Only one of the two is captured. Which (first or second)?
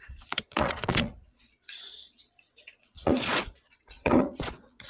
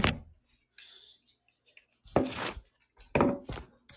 second